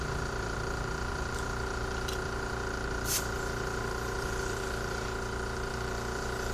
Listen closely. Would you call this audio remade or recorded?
remade